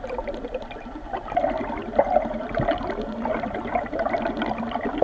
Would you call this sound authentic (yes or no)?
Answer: yes